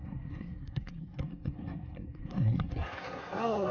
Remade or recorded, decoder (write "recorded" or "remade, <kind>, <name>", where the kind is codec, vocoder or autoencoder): remade, codec, SNAC